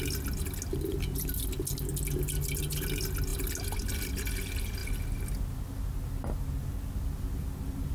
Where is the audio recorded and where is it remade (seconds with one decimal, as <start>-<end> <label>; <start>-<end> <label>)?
0.0-7.9 recorded